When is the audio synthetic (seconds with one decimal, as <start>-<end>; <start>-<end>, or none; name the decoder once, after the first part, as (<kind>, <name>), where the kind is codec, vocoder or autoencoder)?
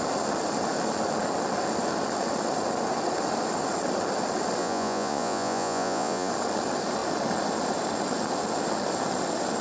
4.6-6.3 (vocoder, Vocos)